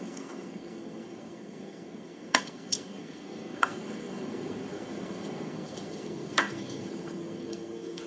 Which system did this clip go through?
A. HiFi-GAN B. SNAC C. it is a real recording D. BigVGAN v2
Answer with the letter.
B